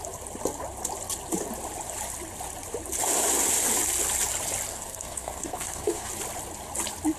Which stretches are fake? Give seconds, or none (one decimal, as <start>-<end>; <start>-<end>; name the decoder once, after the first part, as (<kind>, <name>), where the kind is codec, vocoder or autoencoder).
4.7-6.1 (codec, SNAC)